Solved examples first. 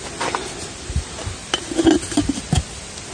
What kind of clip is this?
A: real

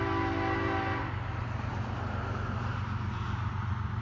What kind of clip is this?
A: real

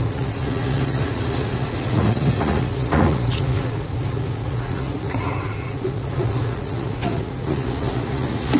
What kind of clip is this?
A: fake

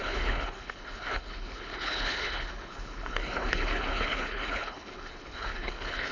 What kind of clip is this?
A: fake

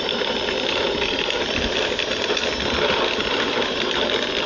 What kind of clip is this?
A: real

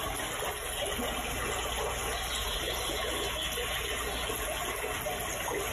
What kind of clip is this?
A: real